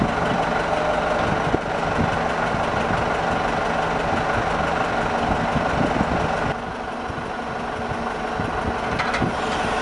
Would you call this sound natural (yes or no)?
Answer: yes